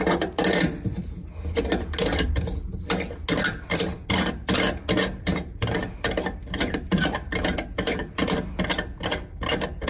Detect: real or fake real